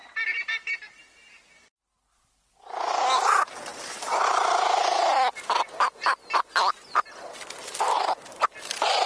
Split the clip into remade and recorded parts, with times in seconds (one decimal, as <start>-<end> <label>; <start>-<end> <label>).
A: 0.0-9.1 recorded